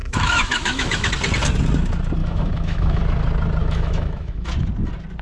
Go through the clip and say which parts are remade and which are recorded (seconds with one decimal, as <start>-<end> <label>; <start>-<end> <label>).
0.0-1.1 remade; 1.1-2.2 recorded; 2.2-3.0 remade; 3.0-3.6 recorded; 3.6-4.5 remade; 4.5-5.2 recorded